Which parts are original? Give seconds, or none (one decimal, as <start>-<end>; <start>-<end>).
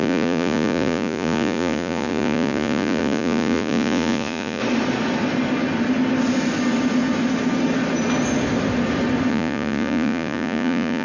4.6-9.3